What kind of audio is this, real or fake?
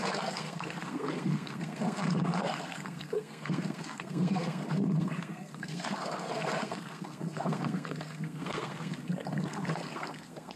fake